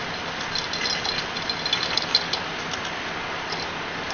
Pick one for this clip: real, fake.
real